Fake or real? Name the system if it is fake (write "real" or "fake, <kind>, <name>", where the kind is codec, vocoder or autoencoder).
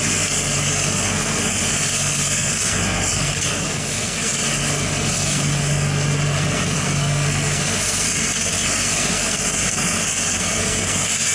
fake, codec, SNAC